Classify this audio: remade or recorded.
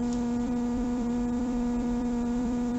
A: remade